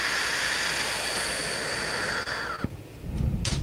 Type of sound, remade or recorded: recorded